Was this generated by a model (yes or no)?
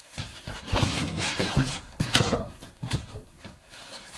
yes